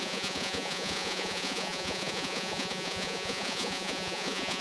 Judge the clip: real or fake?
fake